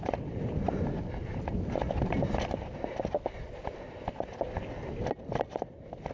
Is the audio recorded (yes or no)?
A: yes